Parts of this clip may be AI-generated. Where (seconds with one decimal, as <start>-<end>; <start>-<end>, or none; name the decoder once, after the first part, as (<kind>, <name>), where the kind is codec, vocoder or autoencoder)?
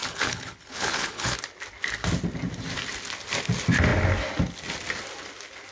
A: 0.0-1.4 (codec, HILCodec)